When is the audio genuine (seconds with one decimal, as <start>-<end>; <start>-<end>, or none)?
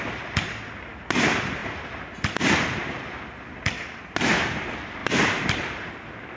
0.0-5.0; 5.9-6.4